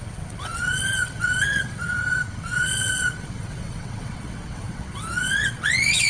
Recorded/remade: remade